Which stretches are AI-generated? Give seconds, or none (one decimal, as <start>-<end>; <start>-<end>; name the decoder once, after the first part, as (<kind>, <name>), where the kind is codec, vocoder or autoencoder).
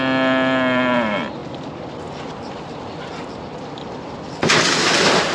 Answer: none